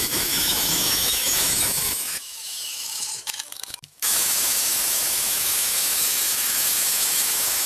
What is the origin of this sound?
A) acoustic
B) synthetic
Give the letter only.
B